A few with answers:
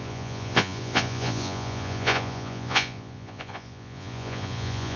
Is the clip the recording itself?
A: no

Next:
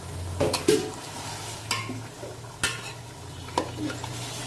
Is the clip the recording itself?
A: yes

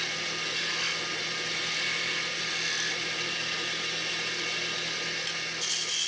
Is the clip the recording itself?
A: yes